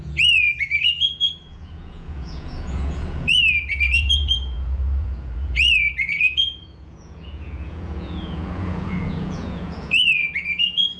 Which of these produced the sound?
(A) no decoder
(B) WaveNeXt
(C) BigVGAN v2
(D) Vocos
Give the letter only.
D